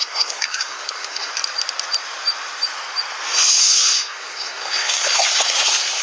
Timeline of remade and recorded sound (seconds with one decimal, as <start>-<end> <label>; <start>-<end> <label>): 0.0-1.3 remade; 1.3-3.6 recorded; 3.6-6.0 remade